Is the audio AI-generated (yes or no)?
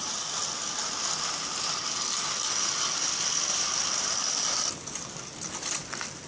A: no